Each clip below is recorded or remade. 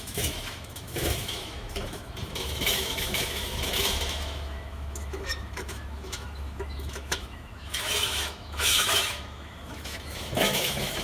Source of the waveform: remade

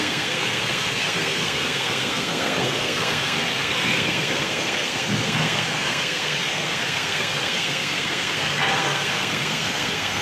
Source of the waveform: remade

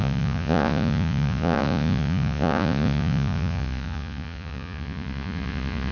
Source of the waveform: remade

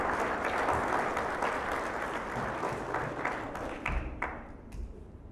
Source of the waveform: recorded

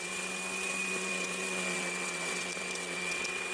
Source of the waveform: remade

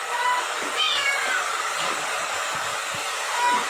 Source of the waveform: remade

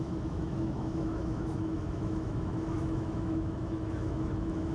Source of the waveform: remade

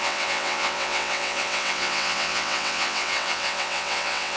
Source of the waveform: remade